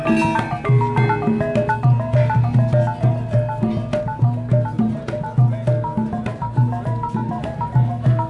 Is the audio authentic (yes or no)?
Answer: yes